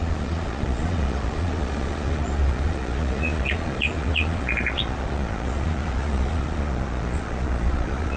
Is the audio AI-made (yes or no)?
yes